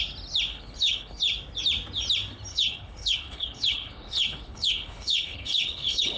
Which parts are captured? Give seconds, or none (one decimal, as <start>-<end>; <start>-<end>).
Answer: 0.0-0.5; 1.2-2.5